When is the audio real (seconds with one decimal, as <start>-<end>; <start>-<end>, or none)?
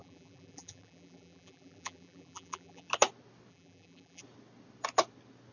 2.9-3.5; 4.2-5.5